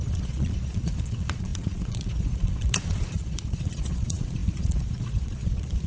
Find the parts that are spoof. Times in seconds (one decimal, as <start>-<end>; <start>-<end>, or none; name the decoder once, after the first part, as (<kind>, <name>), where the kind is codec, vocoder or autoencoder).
0.0-5.9 (vocoder, Vocos)